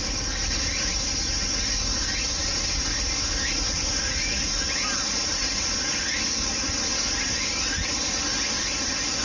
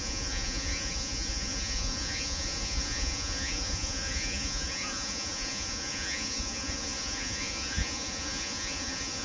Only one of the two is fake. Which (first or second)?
second